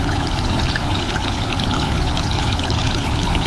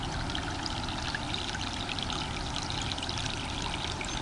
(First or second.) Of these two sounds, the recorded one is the second